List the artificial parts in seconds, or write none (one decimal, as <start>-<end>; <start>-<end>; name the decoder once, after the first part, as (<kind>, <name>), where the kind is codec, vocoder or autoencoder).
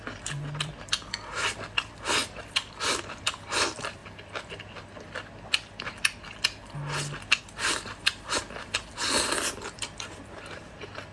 0.0-4.0 (vocoder, BigVGAN v2); 7.4-11.1